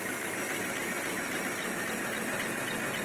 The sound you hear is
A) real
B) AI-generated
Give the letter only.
A